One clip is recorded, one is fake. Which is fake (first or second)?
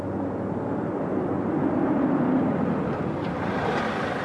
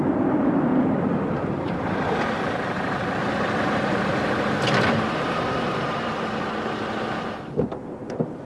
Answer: second